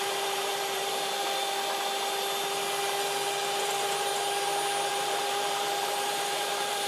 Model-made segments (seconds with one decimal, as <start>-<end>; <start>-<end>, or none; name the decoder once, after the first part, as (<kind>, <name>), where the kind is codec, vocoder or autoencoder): 0.0-1.2 (vocoder, BigVGAN v2); 3.6-4.1; 4.9-6.9